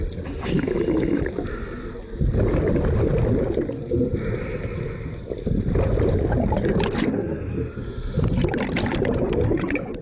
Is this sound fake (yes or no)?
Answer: no